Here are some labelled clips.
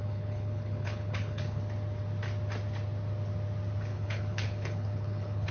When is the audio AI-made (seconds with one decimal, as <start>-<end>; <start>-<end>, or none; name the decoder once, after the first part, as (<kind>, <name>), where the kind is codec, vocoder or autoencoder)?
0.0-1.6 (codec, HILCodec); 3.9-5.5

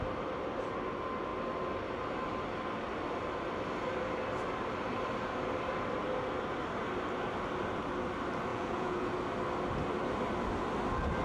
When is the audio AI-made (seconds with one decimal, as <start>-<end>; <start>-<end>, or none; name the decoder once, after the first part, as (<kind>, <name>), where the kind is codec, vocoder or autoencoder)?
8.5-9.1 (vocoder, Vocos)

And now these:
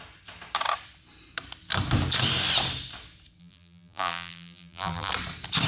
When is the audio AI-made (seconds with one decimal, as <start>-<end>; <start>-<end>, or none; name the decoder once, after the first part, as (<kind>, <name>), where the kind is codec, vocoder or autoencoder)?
3.4-5.1 (vocoder, BigVGAN v2)